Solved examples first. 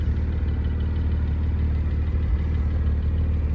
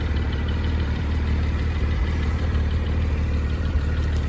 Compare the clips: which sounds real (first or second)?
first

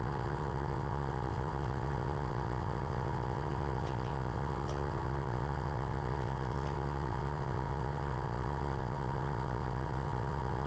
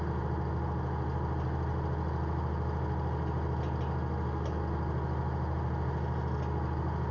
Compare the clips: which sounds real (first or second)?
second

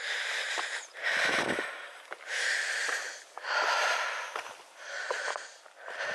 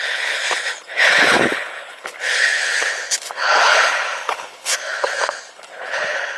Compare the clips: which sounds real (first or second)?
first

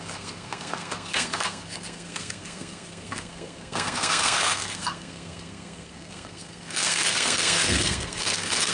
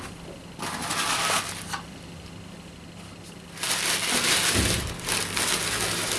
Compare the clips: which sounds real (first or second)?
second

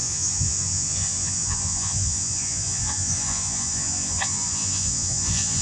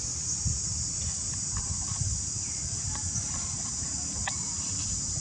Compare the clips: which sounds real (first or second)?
second